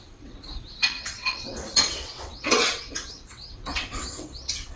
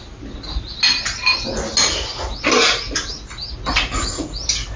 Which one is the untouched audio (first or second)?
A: second